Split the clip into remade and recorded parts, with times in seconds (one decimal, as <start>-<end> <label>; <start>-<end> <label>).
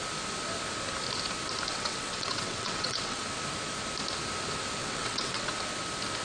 0.0-1.7 recorded; 1.7-3.2 remade; 3.2-4.8 recorded; 4.8-5.5 remade; 5.5-6.2 recorded